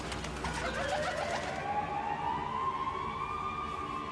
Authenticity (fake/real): real